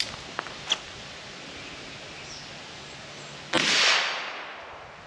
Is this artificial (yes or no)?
no